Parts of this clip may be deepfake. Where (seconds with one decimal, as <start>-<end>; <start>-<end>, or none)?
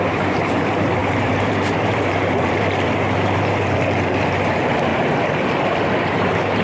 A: 0.0-4.9; 5.9-6.6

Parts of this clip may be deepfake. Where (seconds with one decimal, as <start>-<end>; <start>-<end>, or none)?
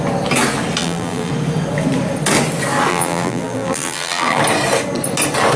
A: 0.8-1.3; 2.9-4.4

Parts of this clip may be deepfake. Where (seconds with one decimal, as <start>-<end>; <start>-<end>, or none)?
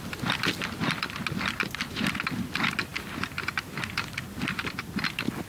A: none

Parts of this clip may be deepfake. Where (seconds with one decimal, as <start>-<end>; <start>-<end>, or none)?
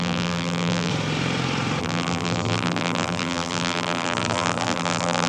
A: 0.0-0.9; 1.8-5.3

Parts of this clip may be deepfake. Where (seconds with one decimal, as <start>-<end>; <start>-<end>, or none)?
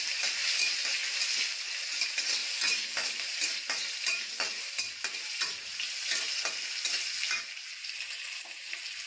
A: 0.0-1.0; 1.6-9.1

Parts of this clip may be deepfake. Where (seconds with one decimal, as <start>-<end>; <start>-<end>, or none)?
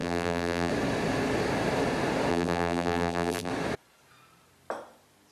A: 0.0-0.7; 2.3-3.5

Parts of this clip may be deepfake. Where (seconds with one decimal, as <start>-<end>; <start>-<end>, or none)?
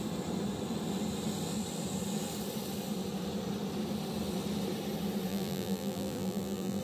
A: 5.3-6.8